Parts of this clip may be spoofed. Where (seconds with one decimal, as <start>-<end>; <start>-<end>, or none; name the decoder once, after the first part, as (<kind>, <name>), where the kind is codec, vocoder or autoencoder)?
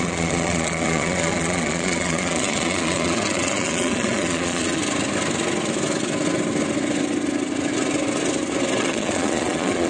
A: 0.0-4.8 (vocoder, Vocos); 8.8-9.9